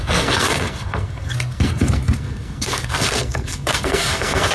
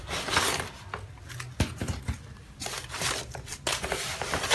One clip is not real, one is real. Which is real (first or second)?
second